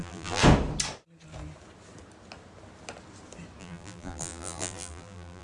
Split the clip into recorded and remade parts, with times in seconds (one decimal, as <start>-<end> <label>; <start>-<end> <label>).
0.0-0.4 remade; 0.4-3.6 recorded; 3.6-5.4 remade